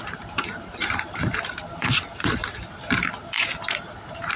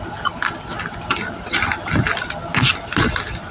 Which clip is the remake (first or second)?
first